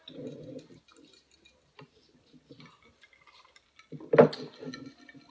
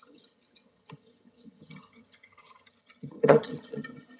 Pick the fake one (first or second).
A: second